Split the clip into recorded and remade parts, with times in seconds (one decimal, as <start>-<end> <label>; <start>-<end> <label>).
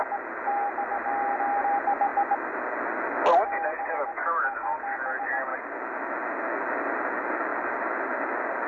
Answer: 0.0-8.7 recorded